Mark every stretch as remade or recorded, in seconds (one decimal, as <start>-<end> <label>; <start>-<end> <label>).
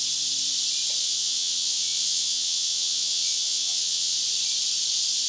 0.0-1.0 recorded; 1.0-4.2 remade; 4.2-5.3 recorded